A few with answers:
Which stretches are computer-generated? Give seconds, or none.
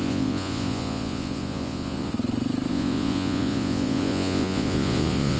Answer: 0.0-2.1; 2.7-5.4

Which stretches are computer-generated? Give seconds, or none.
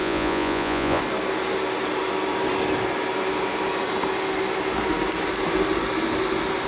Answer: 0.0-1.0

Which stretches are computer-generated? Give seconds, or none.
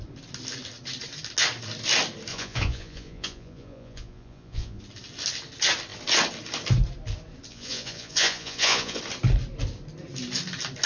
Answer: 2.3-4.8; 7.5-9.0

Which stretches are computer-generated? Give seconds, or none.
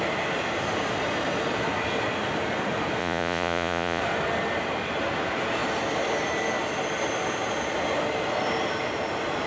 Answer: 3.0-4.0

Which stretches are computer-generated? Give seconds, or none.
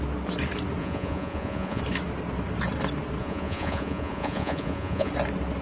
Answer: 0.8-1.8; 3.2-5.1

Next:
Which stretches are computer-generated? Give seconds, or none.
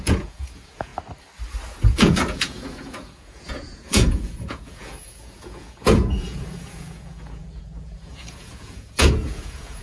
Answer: 0.0-0.9; 1.8-9.8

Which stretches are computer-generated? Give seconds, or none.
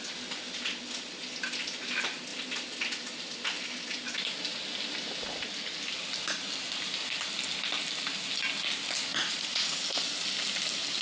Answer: 9.1-9.8